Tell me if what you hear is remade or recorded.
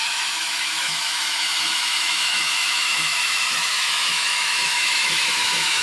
remade